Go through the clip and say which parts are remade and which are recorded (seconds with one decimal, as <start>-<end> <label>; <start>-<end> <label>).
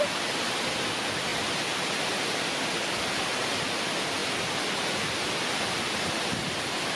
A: 0.0-7.0 recorded